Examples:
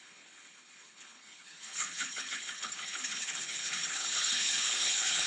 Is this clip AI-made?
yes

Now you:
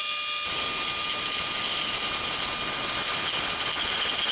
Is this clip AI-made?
no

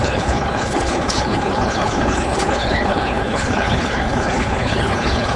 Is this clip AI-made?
yes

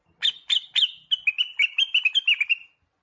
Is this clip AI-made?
no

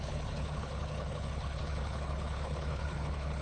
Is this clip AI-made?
yes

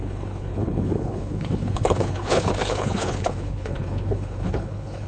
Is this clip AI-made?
yes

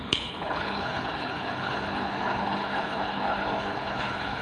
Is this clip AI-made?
yes